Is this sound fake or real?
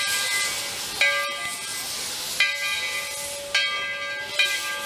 real